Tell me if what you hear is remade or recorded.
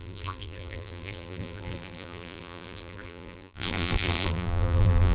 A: remade